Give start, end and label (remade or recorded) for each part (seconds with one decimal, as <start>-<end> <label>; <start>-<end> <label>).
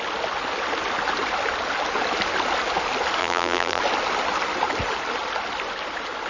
0.0-3.2 recorded; 3.2-3.8 remade; 3.8-6.3 recorded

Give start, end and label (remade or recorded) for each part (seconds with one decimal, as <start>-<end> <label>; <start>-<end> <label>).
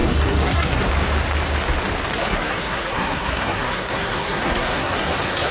0.0-0.8 remade; 0.8-2.2 recorded; 2.2-5.5 remade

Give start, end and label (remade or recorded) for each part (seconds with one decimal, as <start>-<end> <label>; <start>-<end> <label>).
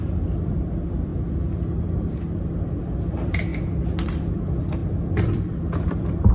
0.0-1.1 remade; 1.1-2.4 recorded; 2.4-3.5 remade; 3.5-4.3 recorded; 4.3-6.3 remade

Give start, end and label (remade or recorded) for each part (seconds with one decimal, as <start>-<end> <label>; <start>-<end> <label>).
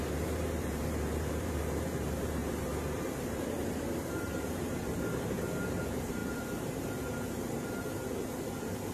0.0-8.9 remade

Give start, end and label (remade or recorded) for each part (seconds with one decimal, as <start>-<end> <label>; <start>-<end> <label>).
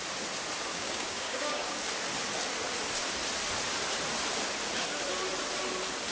0.0-0.7 recorded; 0.7-1.7 remade; 1.7-6.1 recorded